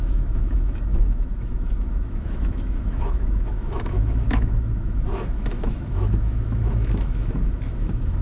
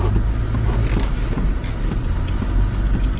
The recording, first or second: second